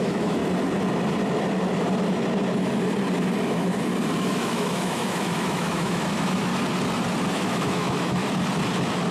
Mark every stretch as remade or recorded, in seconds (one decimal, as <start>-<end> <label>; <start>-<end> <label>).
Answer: 0.0-0.4 remade; 0.4-4.2 recorded; 4.2-6.5 remade; 6.5-7.3 recorded; 7.3-8.2 remade; 8.2-9.1 recorded